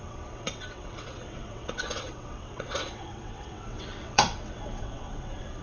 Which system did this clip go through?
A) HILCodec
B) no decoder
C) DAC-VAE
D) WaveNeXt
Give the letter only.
D